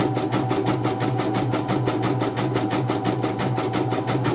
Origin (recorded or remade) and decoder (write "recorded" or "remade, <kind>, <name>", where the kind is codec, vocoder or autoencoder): recorded